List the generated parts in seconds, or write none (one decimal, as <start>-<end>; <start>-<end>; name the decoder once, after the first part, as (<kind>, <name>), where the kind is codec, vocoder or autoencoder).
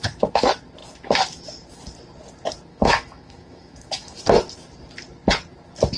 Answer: 2.7-4.2 (autoencoder, DAC-VAE)